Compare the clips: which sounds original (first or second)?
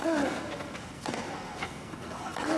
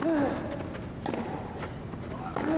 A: second